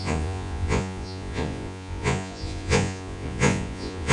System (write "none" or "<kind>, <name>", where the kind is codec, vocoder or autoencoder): vocoder, Vocos